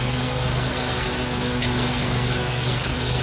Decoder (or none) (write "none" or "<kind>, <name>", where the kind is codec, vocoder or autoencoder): codec, SNAC